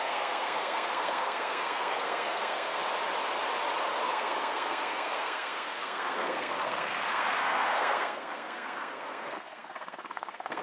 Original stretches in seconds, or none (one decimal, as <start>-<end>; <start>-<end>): 2.8-4.0